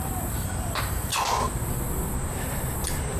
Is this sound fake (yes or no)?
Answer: no